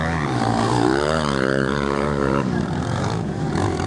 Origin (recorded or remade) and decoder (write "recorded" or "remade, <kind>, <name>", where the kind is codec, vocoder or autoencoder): remade, codec, DAC